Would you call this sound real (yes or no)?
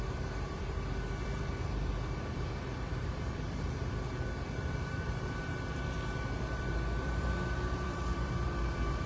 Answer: no